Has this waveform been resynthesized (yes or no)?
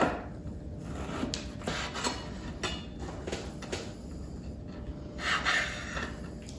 no